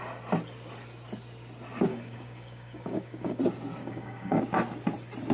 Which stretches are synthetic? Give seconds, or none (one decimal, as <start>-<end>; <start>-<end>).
1.9-3.4; 3.8-4.4